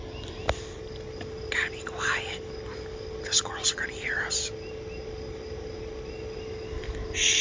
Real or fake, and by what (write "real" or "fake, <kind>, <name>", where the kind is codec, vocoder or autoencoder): real